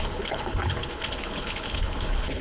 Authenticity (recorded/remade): remade